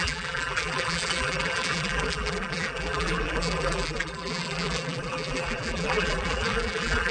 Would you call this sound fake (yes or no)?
yes